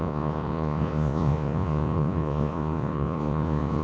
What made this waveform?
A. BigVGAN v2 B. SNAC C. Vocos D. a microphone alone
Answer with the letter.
C